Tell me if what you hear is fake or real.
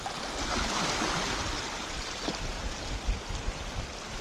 real